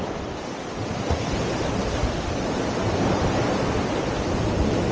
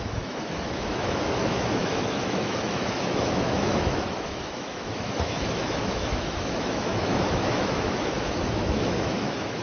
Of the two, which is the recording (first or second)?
first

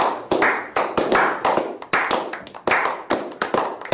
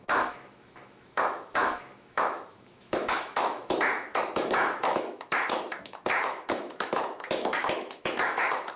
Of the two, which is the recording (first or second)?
first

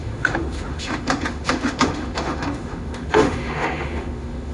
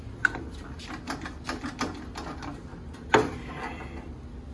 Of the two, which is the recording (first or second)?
second